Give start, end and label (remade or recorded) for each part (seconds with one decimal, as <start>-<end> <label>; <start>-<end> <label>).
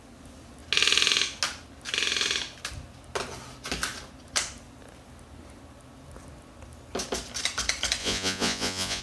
0.0-8.0 recorded; 8.0-9.0 remade